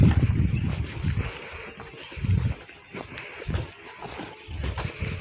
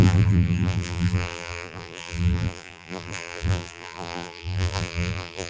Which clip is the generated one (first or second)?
second